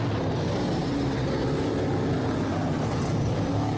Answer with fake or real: real